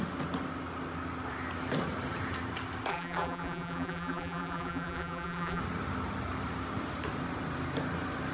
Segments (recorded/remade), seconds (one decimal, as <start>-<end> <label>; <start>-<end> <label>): 0.0-2.9 recorded; 2.9-5.6 remade; 5.6-8.3 recorded